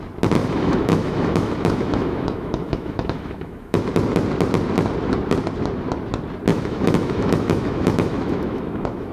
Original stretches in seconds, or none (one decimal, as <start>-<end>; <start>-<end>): 0.0-0.4; 3.8-6.5